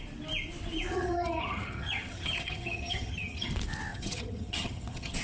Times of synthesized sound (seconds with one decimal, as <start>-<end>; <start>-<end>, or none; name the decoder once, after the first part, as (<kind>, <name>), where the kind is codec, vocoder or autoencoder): 0.9-3.5 (vocoder, HiFi-GAN); 3.9-5.2